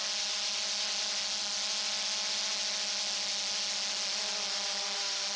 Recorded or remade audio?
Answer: recorded